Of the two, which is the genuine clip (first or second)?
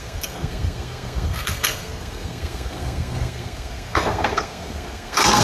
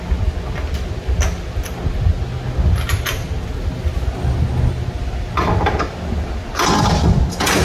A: second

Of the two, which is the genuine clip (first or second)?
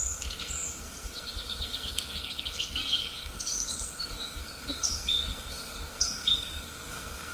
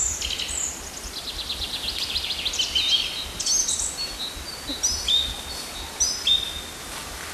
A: second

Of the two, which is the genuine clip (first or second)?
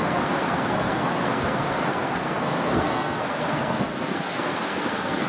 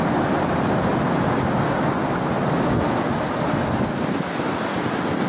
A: second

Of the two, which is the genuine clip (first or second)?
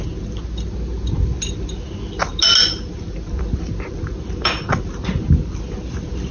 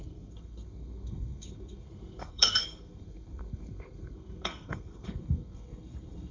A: first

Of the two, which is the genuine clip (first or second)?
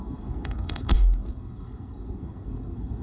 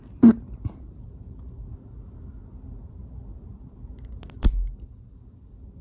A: second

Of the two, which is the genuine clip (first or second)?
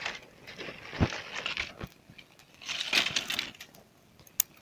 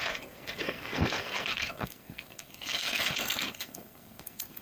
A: first